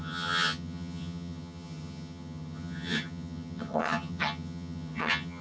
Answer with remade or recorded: remade